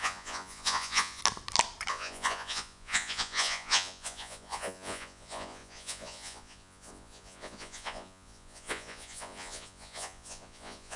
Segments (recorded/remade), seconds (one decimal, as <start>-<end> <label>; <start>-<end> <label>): 0.0-1.2 remade; 1.2-1.9 recorded; 1.9-11.0 remade

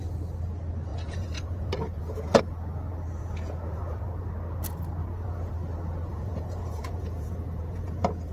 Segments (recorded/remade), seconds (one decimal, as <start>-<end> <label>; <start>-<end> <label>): 0.0-0.9 recorded; 0.9-2.4 remade; 2.4-3.2 recorded; 3.2-4.2 remade; 4.2-5.0 recorded; 5.0-5.5 remade; 5.5-6.1 recorded; 6.1-8.3 remade

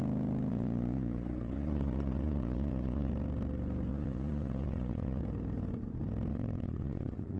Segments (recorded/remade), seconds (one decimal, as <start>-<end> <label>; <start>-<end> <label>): 0.0-0.5 recorded; 0.5-3.1 remade; 3.1-3.9 recorded; 3.9-5.2 remade; 5.2-6.3 recorded; 6.3-7.4 remade

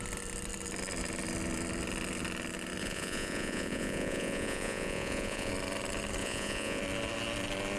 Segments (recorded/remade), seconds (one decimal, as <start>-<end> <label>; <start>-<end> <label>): 0.0-2.8 recorded; 2.8-5.5 remade; 5.5-6.2 recorded; 6.2-6.8 remade; 6.8-7.8 recorded

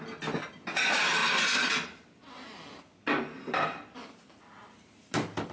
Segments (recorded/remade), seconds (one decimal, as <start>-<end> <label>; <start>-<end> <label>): 0.0-5.5 recorded

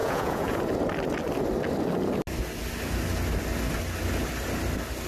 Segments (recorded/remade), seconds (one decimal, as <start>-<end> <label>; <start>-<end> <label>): 0.0-0.6 remade; 0.6-5.1 recorded

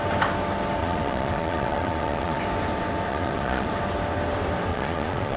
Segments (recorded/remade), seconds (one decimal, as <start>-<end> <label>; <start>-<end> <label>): 0.0-0.8 recorded; 0.8-2.4 remade; 2.4-3.1 recorded; 3.1-3.7 remade; 3.7-4.7 recorded; 4.7-5.4 remade